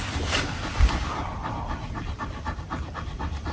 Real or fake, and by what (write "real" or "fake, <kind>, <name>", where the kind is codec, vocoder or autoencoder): real